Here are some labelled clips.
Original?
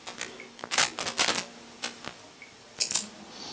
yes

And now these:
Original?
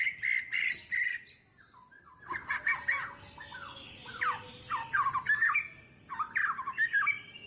yes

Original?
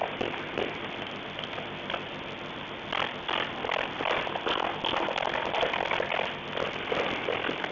yes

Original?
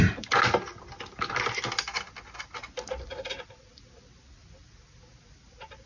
yes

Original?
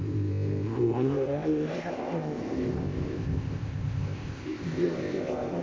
no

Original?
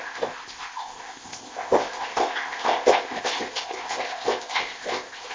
no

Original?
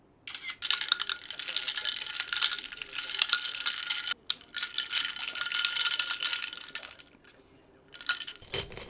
yes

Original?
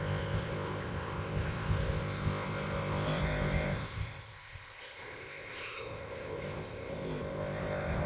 no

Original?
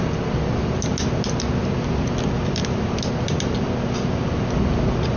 yes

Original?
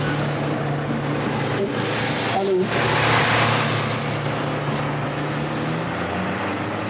yes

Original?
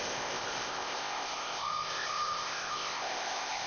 no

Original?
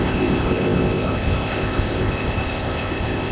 no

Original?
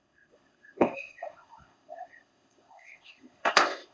no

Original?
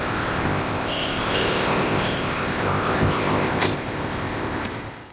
no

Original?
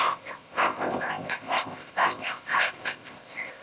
no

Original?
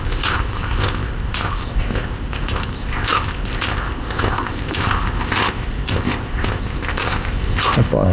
no